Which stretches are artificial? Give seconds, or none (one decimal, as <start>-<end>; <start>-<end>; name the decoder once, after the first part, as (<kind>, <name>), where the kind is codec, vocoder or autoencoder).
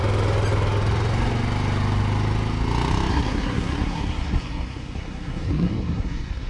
3.1-6.5 (codec, SNAC)